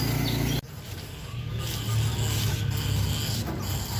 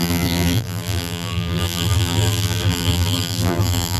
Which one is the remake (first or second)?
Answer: second